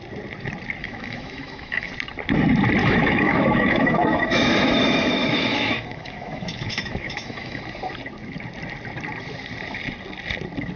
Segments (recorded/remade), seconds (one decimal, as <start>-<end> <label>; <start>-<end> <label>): 0.0-0.8 recorded; 0.8-1.9 remade; 1.9-2.8 recorded; 2.8-7.6 remade; 7.6-10.8 recorded